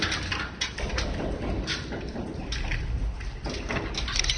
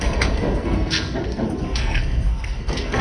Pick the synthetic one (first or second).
second